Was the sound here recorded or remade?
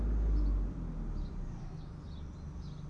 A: recorded